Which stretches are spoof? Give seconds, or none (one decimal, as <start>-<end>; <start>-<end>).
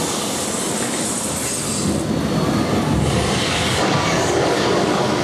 3.1-5.2